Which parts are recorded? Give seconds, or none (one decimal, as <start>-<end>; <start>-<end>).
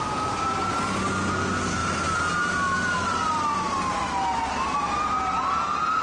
0.0-6.0